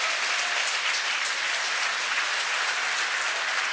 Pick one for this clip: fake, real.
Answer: real